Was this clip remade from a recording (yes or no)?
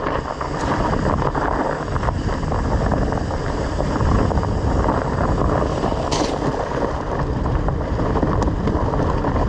no